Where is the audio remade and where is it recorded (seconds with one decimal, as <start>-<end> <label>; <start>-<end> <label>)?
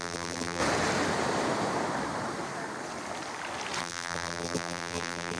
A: 0.0-0.6 remade; 0.6-3.8 recorded; 3.8-5.4 remade